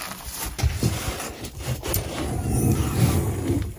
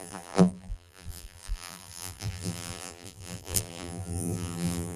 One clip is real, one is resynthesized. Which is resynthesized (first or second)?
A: second